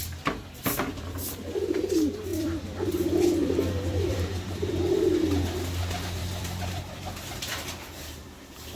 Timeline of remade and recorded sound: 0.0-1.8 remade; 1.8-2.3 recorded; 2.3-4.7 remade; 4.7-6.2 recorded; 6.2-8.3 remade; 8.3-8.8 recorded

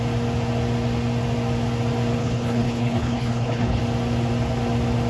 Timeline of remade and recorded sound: 0.0-2.2 recorded; 2.2-3.8 remade; 3.8-5.1 recorded

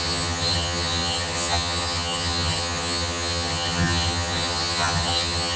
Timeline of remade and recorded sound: 0.0-5.6 remade

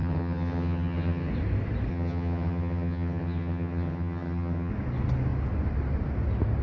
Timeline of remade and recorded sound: 0.0-1.3 remade; 1.3-1.9 recorded; 1.9-4.7 remade; 4.7-6.6 recorded

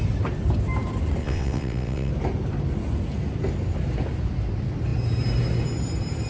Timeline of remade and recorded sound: 0.0-1.2 recorded; 1.2-2.1 remade; 2.1-6.3 recorded

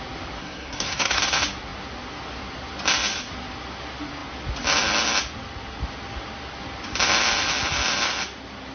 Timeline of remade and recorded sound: 0.0-0.4 recorded; 0.4-1.2 remade; 1.2-8.7 recorded

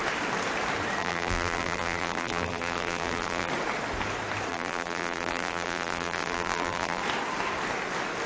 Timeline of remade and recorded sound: 0.0-1.0 recorded; 1.0-3.5 remade; 3.5-4.5 recorded; 4.5-7.0 remade; 7.0-8.3 recorded